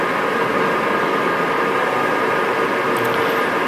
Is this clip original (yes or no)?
yes